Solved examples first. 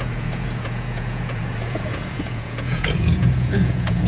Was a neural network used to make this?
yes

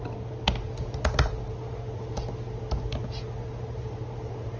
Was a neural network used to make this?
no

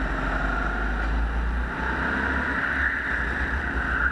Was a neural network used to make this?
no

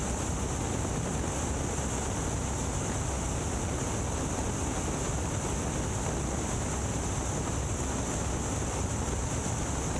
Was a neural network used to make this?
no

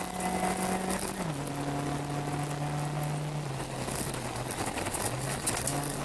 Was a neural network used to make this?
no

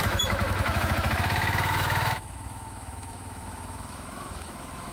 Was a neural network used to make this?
yes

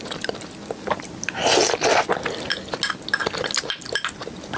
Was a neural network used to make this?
no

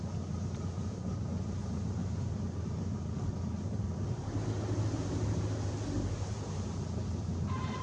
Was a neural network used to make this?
no